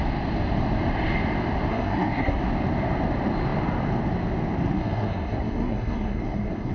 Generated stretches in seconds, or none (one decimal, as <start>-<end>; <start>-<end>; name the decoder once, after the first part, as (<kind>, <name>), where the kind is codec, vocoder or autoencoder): 1.7-2.4 (codec, SNAC); 4.7-6.7